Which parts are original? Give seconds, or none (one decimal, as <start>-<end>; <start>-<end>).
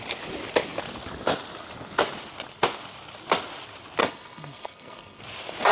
0.0-4.0; 5.2-5.7